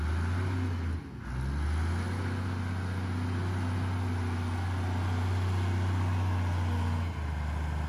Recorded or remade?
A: recorded